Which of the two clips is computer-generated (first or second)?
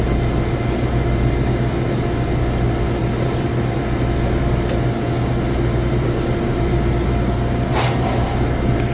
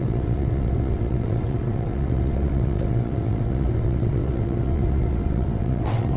second